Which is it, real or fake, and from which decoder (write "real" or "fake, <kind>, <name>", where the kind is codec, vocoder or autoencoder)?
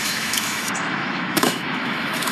fake, autoencoder, DAC-VAE